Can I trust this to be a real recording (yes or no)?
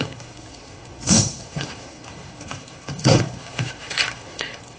no